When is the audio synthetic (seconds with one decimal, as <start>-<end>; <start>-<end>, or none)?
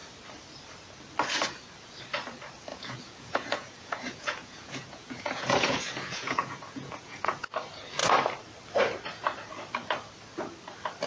2.7-7.5